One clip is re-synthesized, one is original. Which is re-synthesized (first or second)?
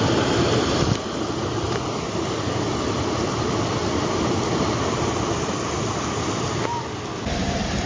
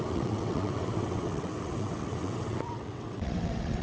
second